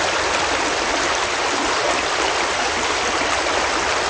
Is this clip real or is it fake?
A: real